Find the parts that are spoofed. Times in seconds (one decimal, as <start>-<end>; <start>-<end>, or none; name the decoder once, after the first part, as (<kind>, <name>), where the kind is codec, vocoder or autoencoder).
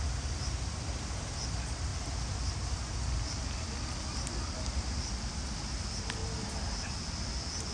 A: none